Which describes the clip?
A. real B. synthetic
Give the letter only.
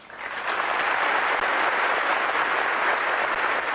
A